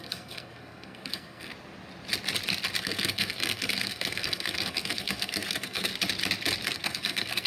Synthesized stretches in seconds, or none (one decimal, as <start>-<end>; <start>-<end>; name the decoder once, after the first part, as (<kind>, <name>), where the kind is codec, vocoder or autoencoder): 0.0-1.5 (codec, SNAC); 2.8-5.9; 6.7-7.5